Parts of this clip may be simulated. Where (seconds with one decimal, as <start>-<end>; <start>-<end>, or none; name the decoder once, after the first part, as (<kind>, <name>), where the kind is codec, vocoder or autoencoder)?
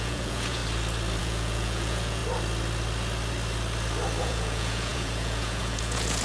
0.0-0.6 (vocoder, Vocos); 1.2-2.2; 4.2-6.2